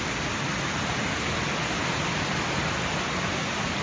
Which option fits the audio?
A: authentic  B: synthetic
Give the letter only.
A